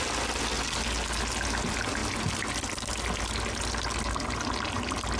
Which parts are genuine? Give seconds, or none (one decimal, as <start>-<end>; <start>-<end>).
0.0-2.0; 3.2-5.2